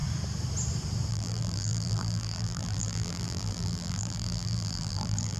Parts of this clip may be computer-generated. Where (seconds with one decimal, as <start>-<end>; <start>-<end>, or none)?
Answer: 1.1-5.4